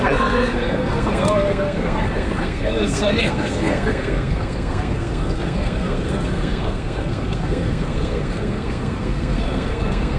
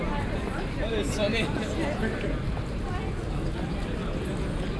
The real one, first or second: second